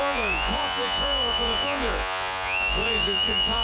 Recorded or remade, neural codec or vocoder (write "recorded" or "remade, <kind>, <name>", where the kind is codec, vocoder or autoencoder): remade, vocoder, Vocos